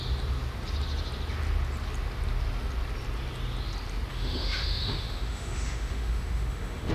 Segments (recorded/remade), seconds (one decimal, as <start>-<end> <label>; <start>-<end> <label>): 0.0-4.1 recorded; 4.1-6.9 remade